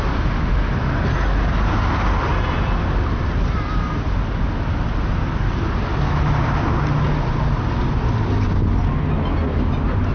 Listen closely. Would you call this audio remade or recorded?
recorded